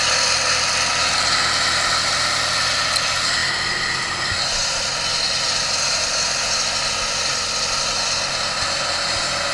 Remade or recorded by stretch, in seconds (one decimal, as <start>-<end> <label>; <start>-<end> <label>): 0.0-9.5 recorded